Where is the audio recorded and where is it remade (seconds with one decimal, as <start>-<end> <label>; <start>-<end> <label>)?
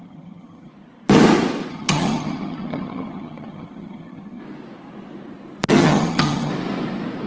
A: 0.0-0.7 remade; 0.7-1.7 recorded; 1.7-4.4 remade; 4.4-5.7 recorded; 5.7-6.5 remade; 6.5-7.3 recorded